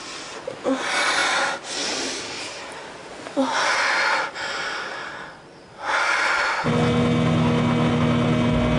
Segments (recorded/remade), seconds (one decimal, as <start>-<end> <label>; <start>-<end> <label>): 0.0-8.8 recorded

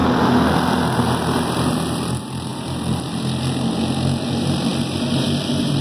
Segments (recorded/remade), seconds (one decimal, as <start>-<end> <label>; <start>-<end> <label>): 0.0-5.8 recorded

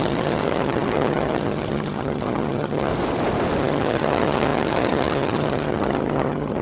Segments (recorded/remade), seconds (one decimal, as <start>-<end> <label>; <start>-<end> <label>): 0.0-2.9 remade; 2.9-3.6 recorded; 3.6-6.6 remade

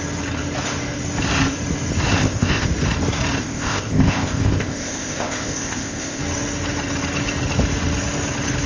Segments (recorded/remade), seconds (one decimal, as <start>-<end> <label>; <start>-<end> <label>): 0.0-2.2 recorded; 2.2-2.7 remade; 2.7-3.4 recorded; 3.4-6.2 remade; 6.2-8.7 recorded

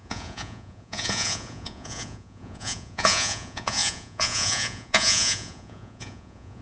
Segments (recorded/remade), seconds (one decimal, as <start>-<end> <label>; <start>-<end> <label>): 0.0-6.6 remade

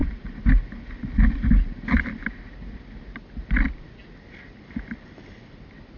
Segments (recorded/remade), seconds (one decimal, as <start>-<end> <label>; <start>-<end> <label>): 0.0-6.0 recorded